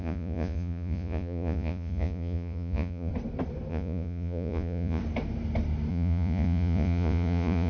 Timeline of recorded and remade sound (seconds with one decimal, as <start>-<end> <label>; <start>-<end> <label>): 0.0-3.1 remade; 3.1-3.7 recorded; 3.7-5.0 remade; 5.0-5.9 recorded; 5.9-7.7 remade